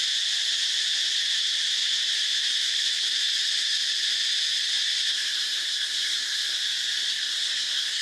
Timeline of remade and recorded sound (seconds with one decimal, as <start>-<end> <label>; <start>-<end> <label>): 0.0-5.1 recorded; 5.1-6.6 remade; 6.6-7.1 recorded; 7.1-8.0 remade